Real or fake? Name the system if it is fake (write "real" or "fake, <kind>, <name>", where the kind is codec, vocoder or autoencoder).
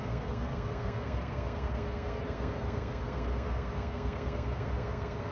fake, codec, SNAC